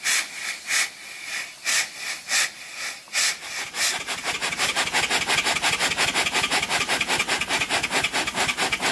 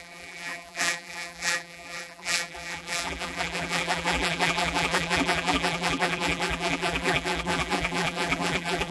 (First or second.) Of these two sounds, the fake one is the second